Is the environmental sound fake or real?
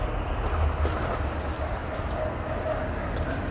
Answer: real